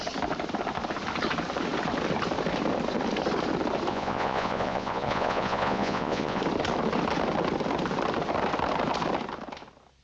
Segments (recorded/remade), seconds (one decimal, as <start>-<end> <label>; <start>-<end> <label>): 0.0-3.9 recorded; 3.9-6.4 remade; 6.4-10.0 recorded